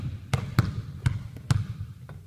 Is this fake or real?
real